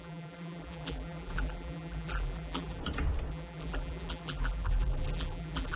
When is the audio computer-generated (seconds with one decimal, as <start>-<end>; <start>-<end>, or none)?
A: 0.0-2.8; 3.3-5.8